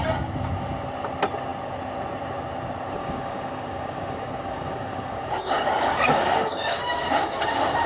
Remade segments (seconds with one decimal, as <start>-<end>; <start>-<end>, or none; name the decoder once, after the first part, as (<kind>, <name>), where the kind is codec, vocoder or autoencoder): 3.0-7.9 (codec, DAC)